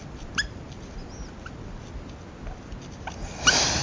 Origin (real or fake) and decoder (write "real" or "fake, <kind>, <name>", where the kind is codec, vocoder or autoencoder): real